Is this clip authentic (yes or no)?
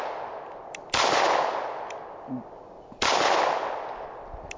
yes